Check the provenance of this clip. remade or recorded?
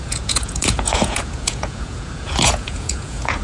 remade